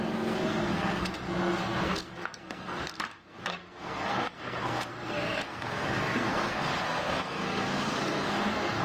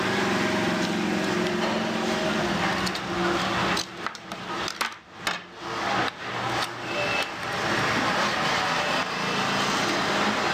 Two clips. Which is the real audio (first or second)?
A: second